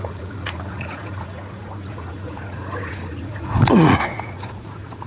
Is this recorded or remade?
remade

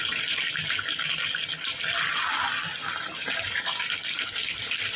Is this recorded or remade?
recorded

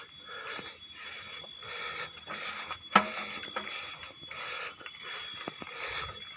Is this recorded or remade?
recorded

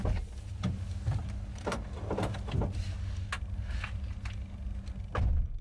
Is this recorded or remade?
recorded